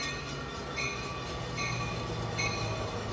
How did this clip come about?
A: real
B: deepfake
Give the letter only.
A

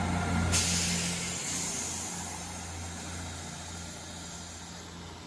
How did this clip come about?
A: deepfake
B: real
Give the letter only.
B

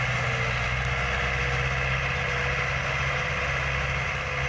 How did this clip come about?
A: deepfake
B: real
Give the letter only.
B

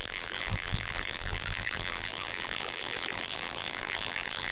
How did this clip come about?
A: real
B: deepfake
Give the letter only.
B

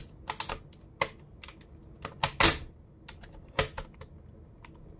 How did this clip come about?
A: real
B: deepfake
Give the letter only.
A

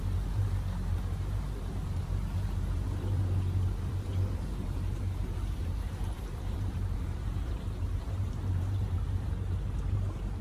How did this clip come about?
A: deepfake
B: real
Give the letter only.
A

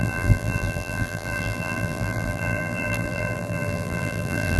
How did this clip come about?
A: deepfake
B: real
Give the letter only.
A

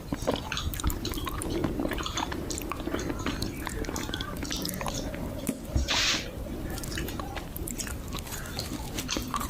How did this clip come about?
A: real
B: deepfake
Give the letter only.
B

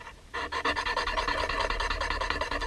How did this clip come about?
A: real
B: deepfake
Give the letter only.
A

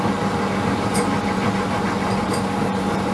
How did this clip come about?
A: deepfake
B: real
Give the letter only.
B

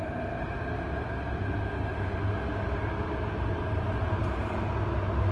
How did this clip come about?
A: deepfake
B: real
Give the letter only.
B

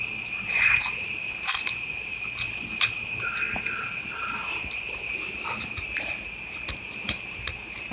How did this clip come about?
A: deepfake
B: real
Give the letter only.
A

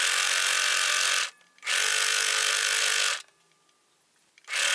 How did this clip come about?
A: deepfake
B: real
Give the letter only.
B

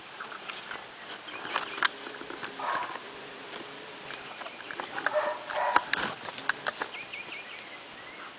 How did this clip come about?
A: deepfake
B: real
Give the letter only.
B